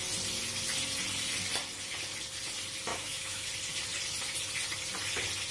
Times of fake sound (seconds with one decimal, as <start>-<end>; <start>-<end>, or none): 2.9-3.5